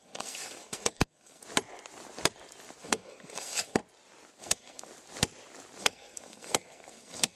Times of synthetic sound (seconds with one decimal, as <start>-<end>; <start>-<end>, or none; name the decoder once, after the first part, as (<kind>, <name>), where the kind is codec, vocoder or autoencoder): 0.0-1.4 (codec, SNAC); 2.8-3.8; 4.4-4.9; 5.8-7.4